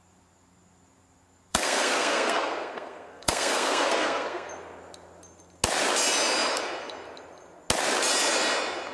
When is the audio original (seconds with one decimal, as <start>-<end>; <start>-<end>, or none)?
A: 0.0-1.5; 4.5-8.9